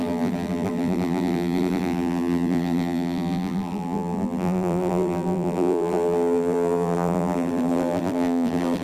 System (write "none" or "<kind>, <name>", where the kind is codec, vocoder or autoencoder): vocoder, BigVGAN v2